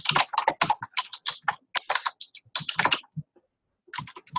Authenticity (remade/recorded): recorded